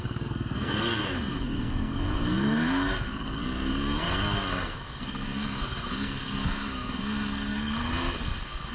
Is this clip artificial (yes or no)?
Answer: yes